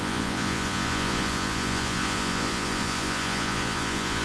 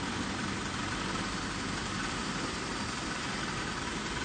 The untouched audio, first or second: second